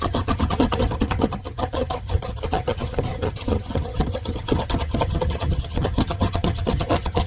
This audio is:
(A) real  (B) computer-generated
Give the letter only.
B